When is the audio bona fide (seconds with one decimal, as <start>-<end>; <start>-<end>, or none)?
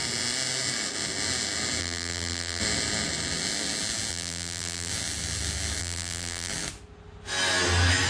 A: 0.0-1.8; 2.6-4.1; 4.9-5.8; 6.5-8.1